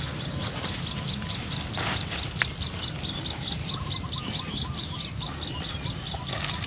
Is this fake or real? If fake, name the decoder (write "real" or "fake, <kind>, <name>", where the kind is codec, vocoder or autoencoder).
fake, vocoder, BigVGAN v2